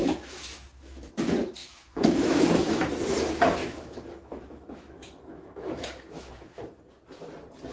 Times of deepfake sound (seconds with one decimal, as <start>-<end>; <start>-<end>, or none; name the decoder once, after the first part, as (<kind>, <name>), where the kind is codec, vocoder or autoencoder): 0.0-1.1 (autoencoder, DAC-VAE); 1.6-2.9; 3.6-6.8

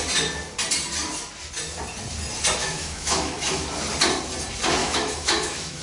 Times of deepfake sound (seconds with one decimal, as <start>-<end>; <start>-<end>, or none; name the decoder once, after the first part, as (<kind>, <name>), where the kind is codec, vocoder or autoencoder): 2.6-3.7 (autoencoder, DAC-VAE); 4.8-5.8

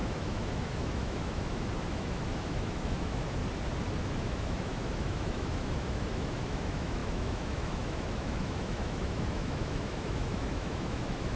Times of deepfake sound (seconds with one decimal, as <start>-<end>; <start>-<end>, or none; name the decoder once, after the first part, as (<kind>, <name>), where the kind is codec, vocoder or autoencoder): 0.0-3.4 (autoencoder, DAC-VAE); 4.0-11.4

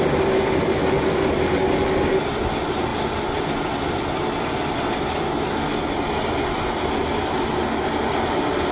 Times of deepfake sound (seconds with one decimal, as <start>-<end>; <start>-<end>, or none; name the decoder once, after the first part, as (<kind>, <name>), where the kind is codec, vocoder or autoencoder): none

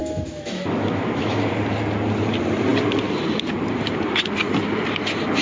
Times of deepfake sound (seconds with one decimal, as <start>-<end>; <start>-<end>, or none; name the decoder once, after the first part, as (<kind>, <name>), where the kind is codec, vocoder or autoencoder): 0.0-1.5 (autoencoder, DAC-VAE)